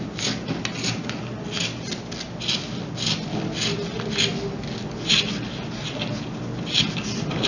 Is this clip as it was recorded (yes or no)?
yes